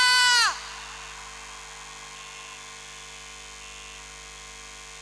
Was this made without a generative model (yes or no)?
yes